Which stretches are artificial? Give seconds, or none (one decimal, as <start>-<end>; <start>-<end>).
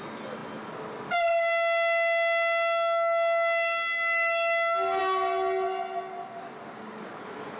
none